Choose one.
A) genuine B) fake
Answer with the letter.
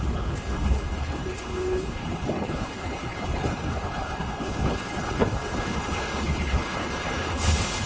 B